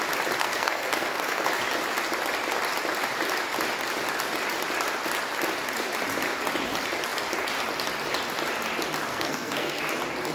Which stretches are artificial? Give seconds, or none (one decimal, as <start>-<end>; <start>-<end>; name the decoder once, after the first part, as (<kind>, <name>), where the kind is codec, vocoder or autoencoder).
0.4-1.5 (codec, SNAC); 9.1-9.8